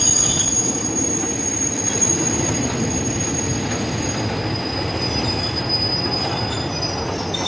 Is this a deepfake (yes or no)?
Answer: no